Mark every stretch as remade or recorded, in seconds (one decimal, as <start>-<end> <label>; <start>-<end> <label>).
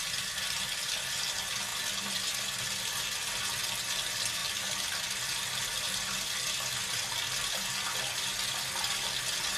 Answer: 0.0-4.4 recorded; 4.4-5.8 remade; 5.8-9.6 recorded